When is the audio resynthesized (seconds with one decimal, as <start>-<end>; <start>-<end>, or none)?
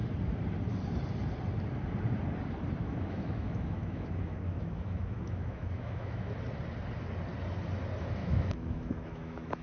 2.8-6.3; 8.2-9.6